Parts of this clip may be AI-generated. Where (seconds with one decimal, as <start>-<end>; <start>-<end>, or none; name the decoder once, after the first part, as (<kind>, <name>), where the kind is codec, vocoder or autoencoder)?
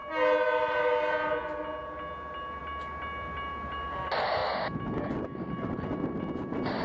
none